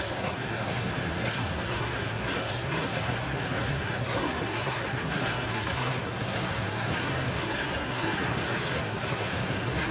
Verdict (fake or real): fake